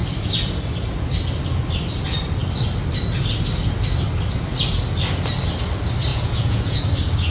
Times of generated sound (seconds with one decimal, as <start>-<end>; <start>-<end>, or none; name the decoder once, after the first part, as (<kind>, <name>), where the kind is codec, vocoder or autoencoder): 6.1-6.8 (vocoder, Vocos)